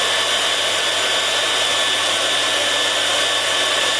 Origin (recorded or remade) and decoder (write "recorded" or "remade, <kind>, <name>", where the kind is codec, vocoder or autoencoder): recorded